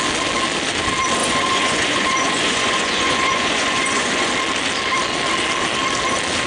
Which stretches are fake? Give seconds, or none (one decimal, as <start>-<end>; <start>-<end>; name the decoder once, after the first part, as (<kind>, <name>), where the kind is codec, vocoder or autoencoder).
1.2-4.3 (vocoder, Vocos)